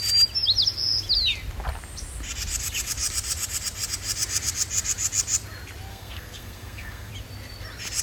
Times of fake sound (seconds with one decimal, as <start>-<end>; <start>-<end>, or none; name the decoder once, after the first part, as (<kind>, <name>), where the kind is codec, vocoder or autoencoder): 5.9-7.1 (codec, SNAC)